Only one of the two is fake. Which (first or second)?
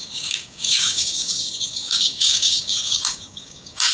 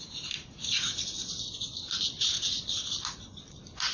first